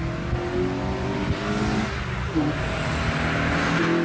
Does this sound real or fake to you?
real